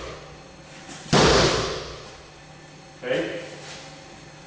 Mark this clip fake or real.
real